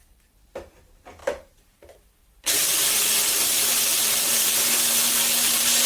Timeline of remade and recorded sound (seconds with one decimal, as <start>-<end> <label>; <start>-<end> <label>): 0.0-1.2 recorded; 1.2-4.7 remade; 4.7-5.9 recorded